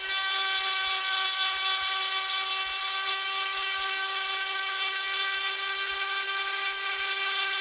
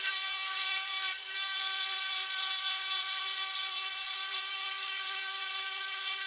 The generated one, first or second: second